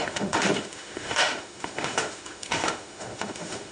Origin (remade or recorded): remade